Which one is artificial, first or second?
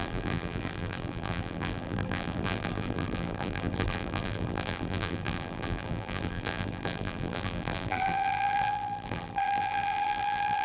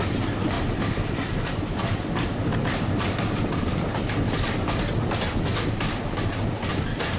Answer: first